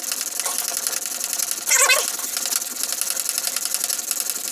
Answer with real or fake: real